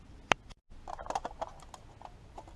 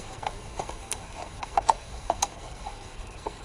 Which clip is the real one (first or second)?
first